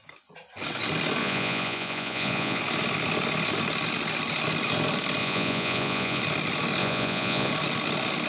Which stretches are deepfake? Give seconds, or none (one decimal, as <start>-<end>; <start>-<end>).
1.2-2.6; 5.2-6.2; 6.8-7.5